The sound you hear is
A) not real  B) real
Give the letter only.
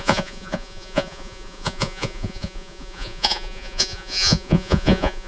A